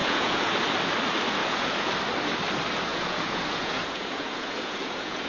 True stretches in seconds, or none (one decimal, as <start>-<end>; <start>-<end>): 0.5-1.4; 1.9-2.9